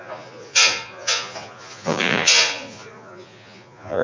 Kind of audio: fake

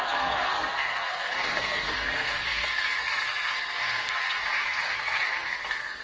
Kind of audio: fake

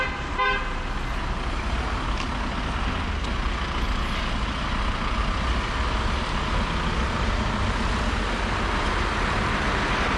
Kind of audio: real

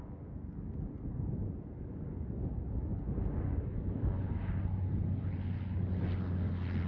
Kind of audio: real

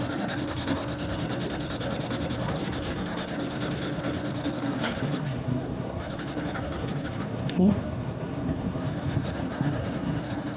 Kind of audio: fake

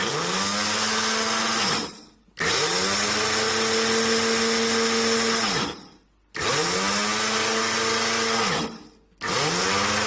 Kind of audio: real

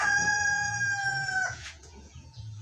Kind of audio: fake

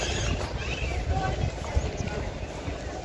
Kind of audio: real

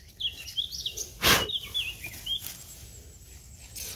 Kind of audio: real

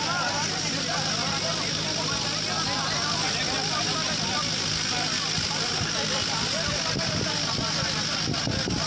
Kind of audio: real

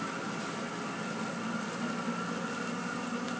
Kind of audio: real